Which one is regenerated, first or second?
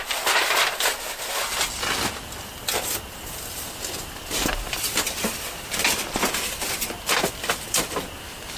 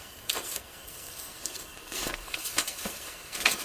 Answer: second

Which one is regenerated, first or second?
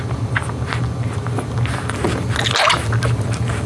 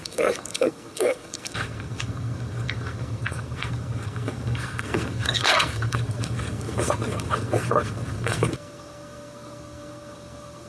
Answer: second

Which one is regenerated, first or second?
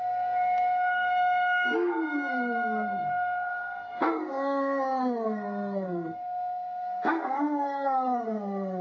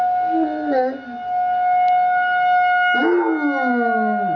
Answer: first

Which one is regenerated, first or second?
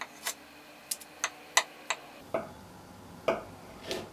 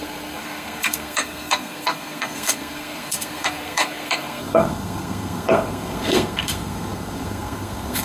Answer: second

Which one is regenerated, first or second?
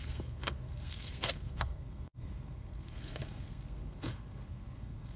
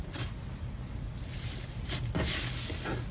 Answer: first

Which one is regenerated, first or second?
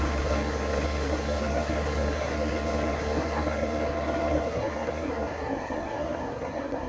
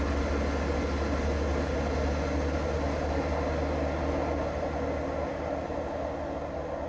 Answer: first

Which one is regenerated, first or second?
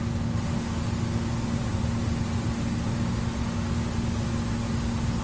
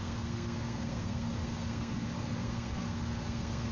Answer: second